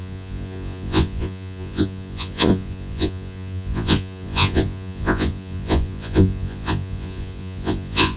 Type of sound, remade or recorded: remade